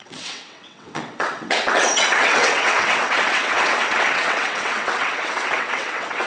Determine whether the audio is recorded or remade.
remade